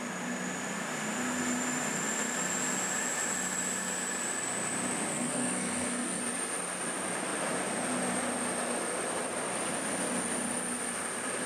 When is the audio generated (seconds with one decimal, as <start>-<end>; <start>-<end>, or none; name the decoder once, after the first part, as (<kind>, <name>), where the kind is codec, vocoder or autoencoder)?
5.1-6.2 (codec, SNAC)

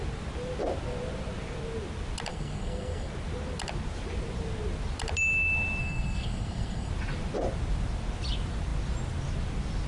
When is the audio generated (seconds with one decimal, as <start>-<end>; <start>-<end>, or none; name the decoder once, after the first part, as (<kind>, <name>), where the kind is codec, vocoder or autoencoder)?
2.3-3.1 (codec, SNAC); 5.8-6.9

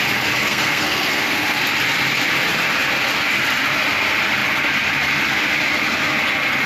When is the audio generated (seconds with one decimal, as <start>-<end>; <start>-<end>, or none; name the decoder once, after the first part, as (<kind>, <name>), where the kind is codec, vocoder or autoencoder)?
0.4-1.6 (codec, SNAC)

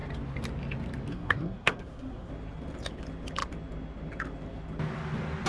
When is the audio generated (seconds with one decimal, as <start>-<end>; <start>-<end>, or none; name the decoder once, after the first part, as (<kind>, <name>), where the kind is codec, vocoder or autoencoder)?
1.1-2.3 (codec, SNAC)

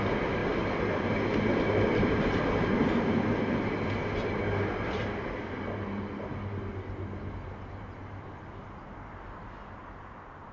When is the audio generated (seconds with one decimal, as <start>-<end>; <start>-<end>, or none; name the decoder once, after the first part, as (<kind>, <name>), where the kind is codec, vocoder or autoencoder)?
none

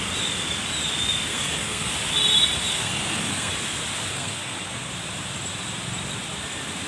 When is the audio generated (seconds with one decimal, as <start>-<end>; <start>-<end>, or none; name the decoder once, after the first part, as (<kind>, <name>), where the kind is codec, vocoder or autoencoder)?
1.3-1.9 (codec, SNAC); 2.7-3.5; 4.1-4.9

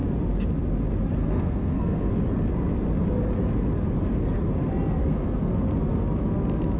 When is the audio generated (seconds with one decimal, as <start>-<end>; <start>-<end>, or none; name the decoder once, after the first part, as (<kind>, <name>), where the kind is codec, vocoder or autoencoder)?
1.2-2.1 (codec, SNAC); 5.0-5.5